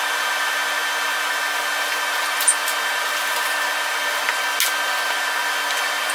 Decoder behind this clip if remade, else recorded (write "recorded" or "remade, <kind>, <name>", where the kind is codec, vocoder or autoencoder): recorded